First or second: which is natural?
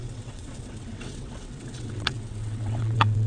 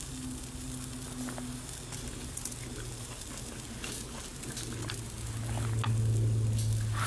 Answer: second